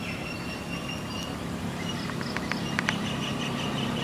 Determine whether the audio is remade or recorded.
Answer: recorded